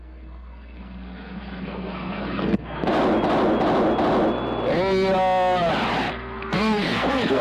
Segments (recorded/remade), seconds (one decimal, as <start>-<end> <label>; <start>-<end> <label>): 0.0-2.9 remade; 2.9-6.1 recorded; 6.1-7.4 remade